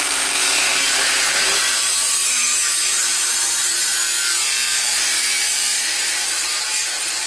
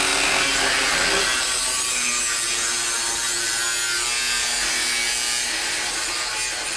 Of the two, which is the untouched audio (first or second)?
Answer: second